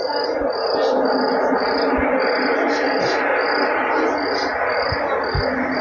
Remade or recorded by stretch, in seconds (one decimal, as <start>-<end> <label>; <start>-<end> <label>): 0.0-5.8 recorded